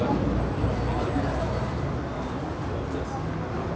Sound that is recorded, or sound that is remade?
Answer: recorded